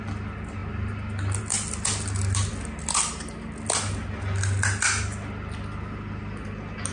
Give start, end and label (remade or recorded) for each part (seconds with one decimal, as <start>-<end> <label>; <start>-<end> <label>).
0.0-6.9 recorded